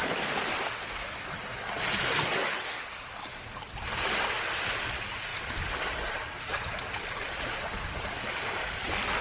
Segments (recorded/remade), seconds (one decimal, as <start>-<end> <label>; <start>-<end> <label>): 0.0-9.2 recorded